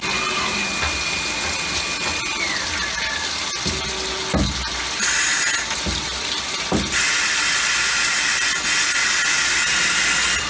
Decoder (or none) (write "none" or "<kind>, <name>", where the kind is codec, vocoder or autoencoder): none